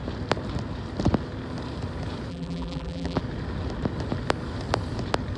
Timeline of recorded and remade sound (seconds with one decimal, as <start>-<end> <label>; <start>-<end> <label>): 0.0-2.3 recorded; 2.3-3.2 remade; 3.2-5.4 recorded